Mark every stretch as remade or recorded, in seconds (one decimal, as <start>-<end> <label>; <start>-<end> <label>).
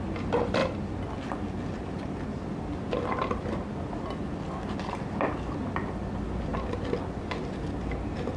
0.0-8.4 recorded